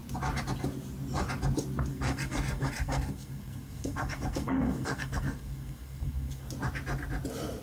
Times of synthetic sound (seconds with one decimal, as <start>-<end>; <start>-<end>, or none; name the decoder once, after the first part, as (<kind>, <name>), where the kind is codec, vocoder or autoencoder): 1.9-6.5 (codec, SNAC)